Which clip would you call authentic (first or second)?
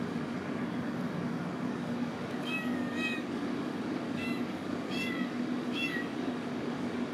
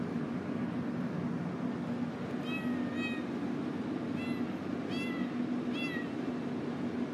second